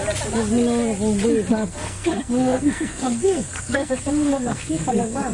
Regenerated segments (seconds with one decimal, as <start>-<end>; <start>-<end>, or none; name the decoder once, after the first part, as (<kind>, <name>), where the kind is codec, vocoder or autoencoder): 1.5-5.3 (codec, SNAC)